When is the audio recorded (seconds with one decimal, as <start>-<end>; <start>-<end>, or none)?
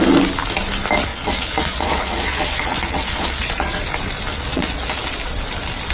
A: 0.0-1.1; 3.7-4.3; 5.0-5.9